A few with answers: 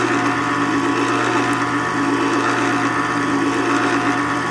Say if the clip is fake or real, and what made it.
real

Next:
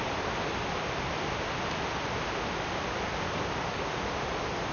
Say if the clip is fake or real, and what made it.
real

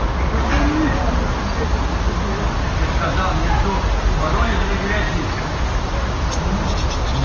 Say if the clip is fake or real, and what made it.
real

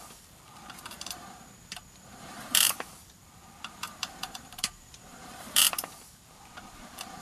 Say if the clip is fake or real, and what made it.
fake, vocoder, BigVGAN v2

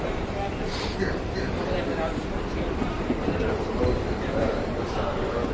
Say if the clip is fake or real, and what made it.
fake, vocoder, BigVGAN v2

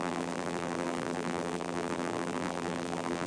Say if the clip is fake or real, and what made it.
fake, vocoder, BigVGAN v2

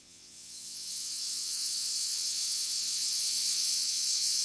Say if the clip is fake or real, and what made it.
fake, vocoder, WaveNeXt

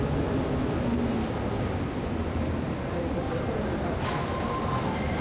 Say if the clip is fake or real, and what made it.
real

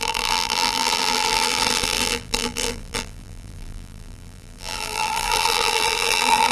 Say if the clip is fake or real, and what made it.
fake, vocoder, BigVGAN v2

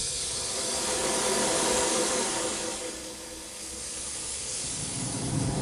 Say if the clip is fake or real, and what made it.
fake, codec, DAC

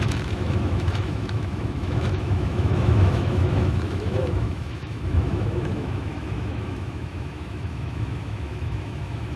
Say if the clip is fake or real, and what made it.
fake, autoencoder, DAC-VAE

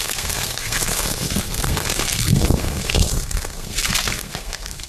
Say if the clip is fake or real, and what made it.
fake, codec, SNAC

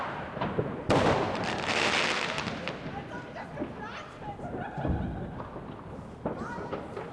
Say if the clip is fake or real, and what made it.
real